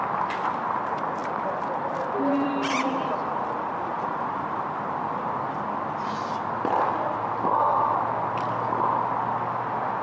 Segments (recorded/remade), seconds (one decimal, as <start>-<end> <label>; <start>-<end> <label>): 0.0-1.2 recorded; 1.2-5.8 remade; 5.8-10.0 recorded